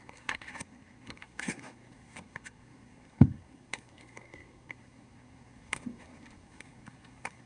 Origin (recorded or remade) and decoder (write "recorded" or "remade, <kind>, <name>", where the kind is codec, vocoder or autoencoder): remade, codec, SNAC